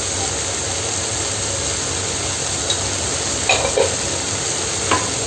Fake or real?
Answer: real